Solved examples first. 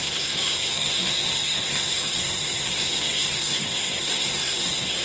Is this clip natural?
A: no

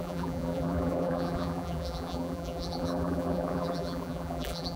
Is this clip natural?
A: no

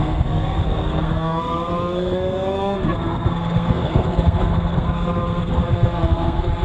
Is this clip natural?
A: no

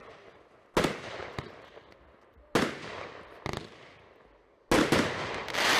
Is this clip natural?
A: yes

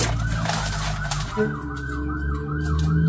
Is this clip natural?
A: yes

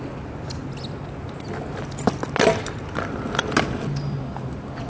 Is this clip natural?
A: yes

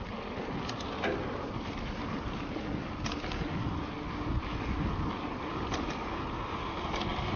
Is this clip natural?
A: yes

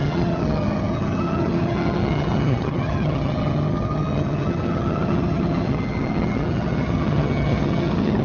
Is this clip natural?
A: no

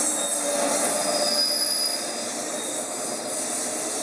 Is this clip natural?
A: yes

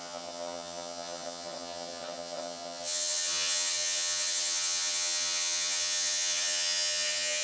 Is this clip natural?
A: no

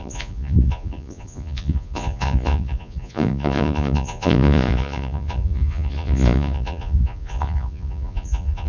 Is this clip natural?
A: no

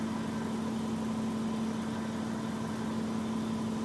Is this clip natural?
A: yes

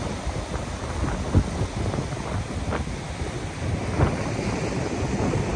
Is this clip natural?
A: yes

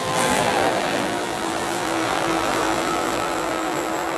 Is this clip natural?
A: no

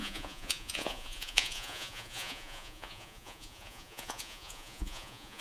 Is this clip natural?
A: no